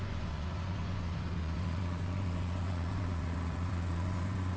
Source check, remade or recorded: remade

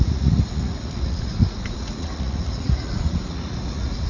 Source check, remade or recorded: remade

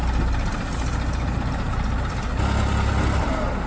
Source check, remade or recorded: recorded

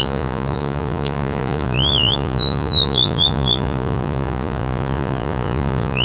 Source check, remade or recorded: remade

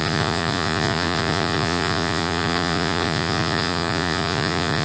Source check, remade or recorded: remade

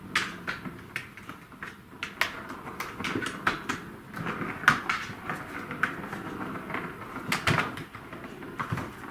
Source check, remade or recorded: recorded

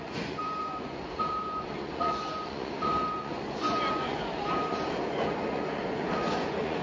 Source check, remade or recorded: remade